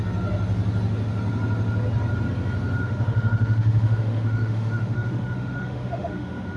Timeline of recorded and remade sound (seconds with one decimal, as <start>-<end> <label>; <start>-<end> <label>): 0.0-2.8 recorded; 2.8-6.6 remade